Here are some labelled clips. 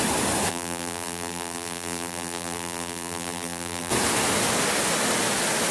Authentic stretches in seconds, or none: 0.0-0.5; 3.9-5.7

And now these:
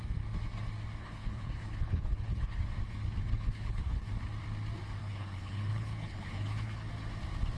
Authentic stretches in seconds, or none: 0.0-1.0; 2.6-3.3; 4.1-5.0; 6.9-7.6

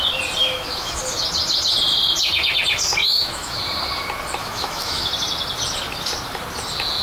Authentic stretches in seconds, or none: 0.0-0.4; 1.0-3.0; 3.6-4.4; 5.1-7.0

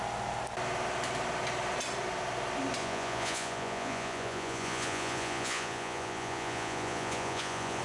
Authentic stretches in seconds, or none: 0.0-2.8

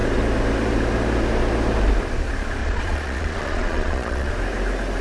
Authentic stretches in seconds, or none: 0.0-2.6; 4.3-5.0

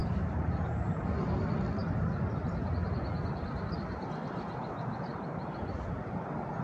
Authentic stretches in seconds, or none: 0.9-1.8; 2.9-5.1; 5.7-6.6

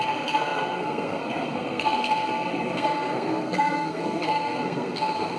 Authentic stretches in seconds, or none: none

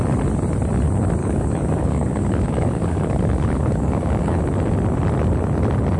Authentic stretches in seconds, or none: 0.0-1.2; 4.4-6.0